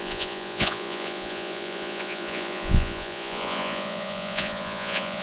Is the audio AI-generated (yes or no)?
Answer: yes